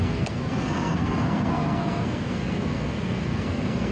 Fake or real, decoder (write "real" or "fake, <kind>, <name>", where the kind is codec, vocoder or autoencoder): fake, codec, SNAC